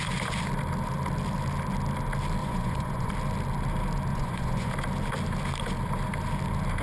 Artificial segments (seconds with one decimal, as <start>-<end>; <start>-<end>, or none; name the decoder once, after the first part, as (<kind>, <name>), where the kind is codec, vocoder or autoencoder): 2.4-3.1 (vocoder, Vocos); 4.1-4.7